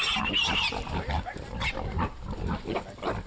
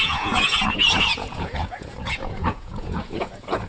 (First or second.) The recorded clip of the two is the first